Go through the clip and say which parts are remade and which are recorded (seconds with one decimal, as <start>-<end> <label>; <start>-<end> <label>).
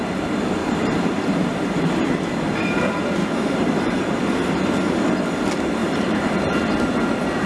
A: 0.0-0.6 recorded; 0.6-2.2 remade; 2.2-3.2 recorded; 3.2-4.0 remade; 4.0-5.8 recorded; 5.8-6.3 remade; 6.3-7.5 recorded